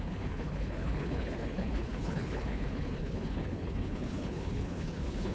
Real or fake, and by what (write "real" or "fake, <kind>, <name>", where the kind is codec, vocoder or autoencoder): fake, codec, HILCodec